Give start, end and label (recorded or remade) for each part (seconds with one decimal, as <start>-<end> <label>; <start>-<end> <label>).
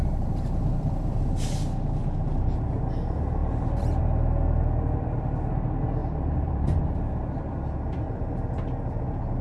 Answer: 0.0-1.2 remade; 1.2-2.0 recorded; 2.0-2.6 remade; 2.6-3.4 recorded; 3.4-4.0 remade; 4.0-6.0 recorded; 6.0-6.8 remade; 6.8-9.4 recorded